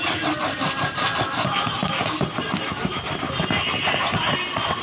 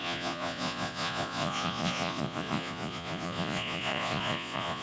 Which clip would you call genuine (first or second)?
first